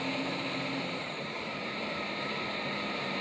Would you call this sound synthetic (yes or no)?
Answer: yes